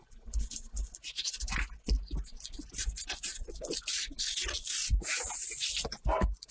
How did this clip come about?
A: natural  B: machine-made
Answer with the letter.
A